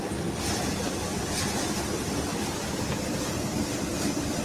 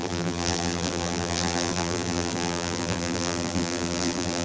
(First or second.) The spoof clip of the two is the second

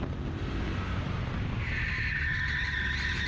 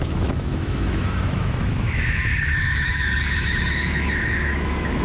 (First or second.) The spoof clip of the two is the second